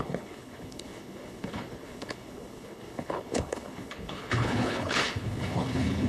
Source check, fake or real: fake